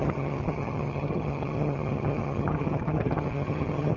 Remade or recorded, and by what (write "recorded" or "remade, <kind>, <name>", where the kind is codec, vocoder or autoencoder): remade, vocoder, HiFi-GAN